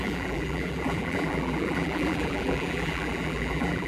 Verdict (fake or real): fake